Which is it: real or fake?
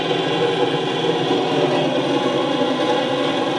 real